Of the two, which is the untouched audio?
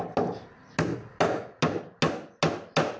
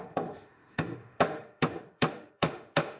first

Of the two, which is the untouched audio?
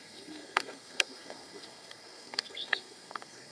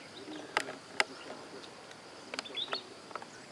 second